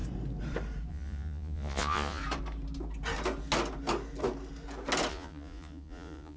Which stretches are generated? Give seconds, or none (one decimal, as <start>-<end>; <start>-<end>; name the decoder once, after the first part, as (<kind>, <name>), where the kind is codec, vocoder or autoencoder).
0.9-2.2 (vocoder, Vocos); 5.1-6.4